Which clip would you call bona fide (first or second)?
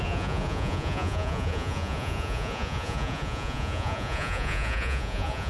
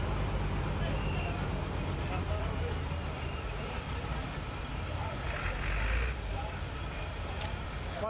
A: second